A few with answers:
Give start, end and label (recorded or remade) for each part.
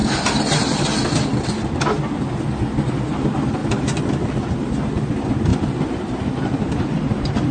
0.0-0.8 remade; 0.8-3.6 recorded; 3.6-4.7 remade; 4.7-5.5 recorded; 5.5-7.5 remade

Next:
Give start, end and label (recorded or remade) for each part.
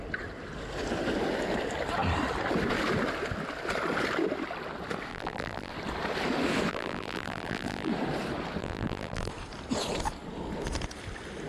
0.0-5.1 recorded; 5.1-5.7 remade; 5.7-6.7 recorded; 6.7-7.9 remade; 7.9-8.6 recorded; 8.6-9.3 remade; 9.3-11.5 recorded